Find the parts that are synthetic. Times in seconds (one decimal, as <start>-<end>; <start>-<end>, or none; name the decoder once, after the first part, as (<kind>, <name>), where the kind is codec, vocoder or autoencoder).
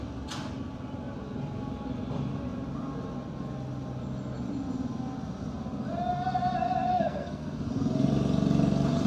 6.9-7.7 (codec, SNAC)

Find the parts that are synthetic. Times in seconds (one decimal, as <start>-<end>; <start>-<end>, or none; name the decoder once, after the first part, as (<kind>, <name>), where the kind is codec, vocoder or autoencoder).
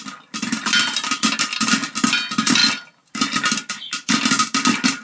none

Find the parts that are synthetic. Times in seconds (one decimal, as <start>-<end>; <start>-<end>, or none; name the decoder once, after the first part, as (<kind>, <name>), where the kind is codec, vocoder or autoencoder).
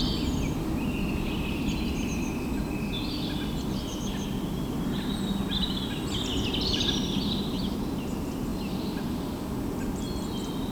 none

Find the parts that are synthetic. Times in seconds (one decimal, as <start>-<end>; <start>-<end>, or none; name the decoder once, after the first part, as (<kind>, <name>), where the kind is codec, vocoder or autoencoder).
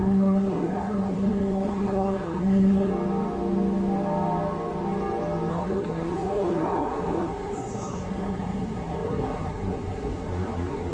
0.0-2.9 (codec, SNAC); 5.5-10.9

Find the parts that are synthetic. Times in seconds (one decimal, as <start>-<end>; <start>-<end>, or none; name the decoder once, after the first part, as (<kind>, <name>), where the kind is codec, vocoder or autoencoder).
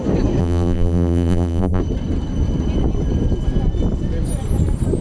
0.4-1.8 (vocoder, BigVGAN v2)